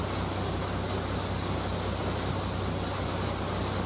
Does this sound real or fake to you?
real